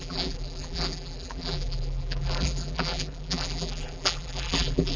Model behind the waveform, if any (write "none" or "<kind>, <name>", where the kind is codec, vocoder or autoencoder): vocoder, BigVGAN v2